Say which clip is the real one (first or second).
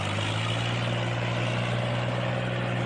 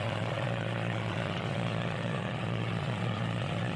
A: first